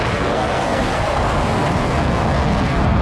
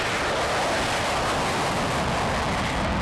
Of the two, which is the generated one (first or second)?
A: first